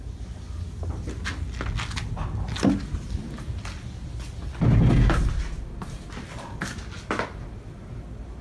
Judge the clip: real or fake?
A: real